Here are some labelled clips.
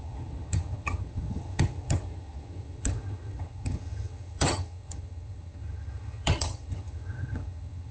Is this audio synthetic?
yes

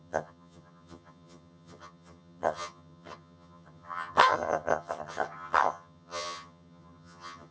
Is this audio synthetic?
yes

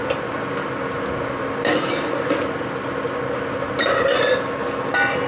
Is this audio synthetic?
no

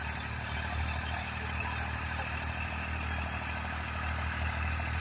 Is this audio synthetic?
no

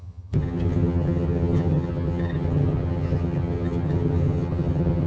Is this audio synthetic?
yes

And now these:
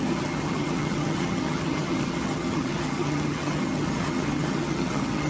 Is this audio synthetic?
yes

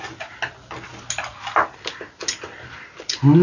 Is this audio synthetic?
no